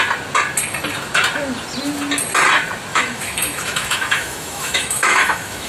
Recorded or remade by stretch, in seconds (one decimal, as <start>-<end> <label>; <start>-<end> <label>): 0.0-2.9 recorded; 2.9-5.7 remade